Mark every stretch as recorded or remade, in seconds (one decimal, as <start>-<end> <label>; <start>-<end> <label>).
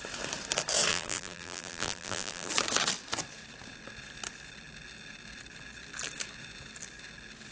0.0-0.9 recorded; 0.9-2.5 remade; 2.5-7.5 recorded